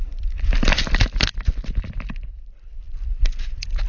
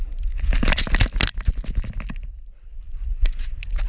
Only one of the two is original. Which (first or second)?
second